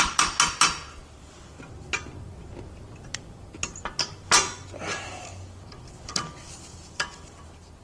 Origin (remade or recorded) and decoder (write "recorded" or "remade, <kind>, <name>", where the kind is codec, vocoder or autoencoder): recorded